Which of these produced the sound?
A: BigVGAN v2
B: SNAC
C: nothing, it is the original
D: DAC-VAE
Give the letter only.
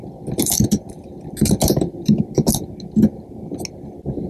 C